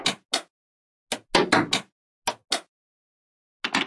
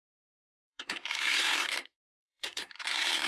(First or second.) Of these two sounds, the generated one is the second